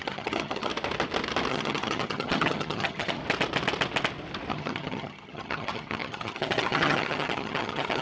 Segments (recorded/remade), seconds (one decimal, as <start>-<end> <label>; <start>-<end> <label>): 0.0-0.7 remade; 0.7-1.5 recorded; 1.5-3.2 remade; 3.2-4.5 recorded; 4.5-8.0 remade